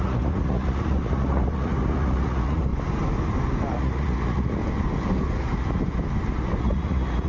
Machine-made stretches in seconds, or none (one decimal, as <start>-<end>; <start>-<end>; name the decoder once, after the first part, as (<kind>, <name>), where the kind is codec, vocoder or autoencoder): 0.0-2.7 (vocoder, Vocos); 3.7-4.6; 6.6-7.3